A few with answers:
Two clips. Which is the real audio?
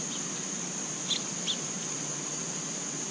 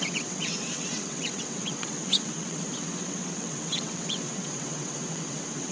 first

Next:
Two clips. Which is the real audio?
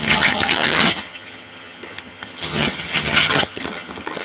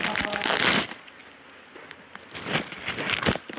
second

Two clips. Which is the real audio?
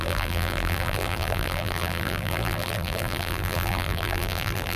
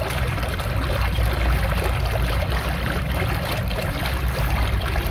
second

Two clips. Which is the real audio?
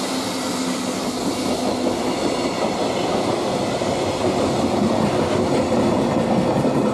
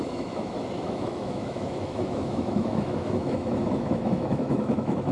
first